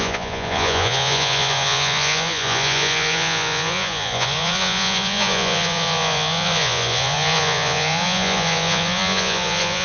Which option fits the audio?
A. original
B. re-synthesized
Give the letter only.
B